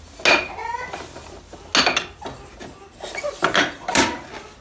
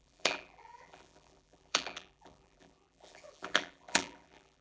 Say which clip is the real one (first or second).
first